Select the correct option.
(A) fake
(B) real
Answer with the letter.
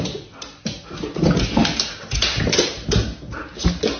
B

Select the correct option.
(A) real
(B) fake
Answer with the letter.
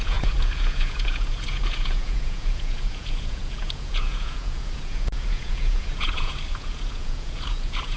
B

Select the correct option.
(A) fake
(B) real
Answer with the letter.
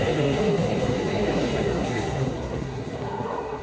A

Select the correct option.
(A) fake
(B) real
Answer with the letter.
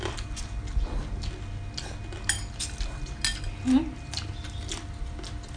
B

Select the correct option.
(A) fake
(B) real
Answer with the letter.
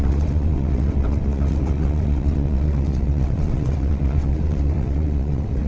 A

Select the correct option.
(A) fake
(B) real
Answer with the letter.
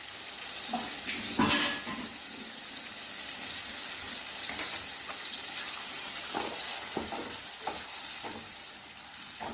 B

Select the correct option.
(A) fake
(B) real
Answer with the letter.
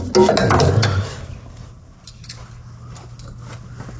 B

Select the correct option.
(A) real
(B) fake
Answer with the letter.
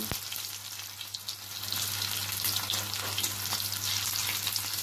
A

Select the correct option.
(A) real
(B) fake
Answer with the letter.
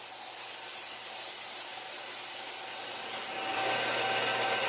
A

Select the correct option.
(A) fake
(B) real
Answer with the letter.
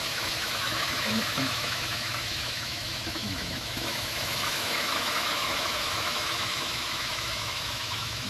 A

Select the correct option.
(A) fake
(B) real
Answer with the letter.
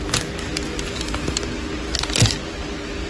B